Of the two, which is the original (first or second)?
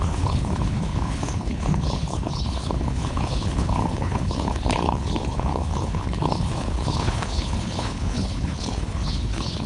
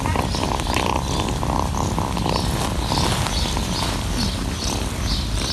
second